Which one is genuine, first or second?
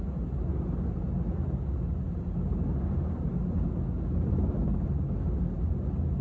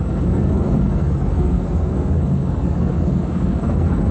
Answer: first